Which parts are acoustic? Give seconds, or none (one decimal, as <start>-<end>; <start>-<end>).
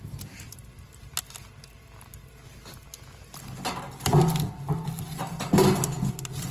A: 0.0-6.5